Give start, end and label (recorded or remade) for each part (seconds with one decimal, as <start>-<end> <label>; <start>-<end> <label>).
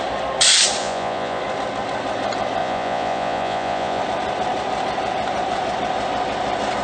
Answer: 0.0-0.8 recorded; 0.8-1.4 remade; 1.4-2.6 recorded; 2.6-4.0 remade; 4.0-6.8 recorded